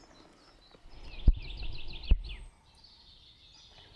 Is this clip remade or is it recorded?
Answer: recorded